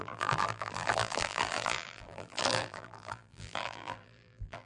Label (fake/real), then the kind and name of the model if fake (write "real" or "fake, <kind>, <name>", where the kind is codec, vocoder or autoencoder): fake, vocoder, BigVGAN v2